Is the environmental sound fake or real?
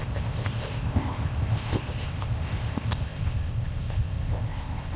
fake